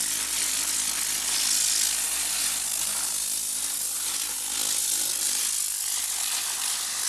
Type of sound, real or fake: real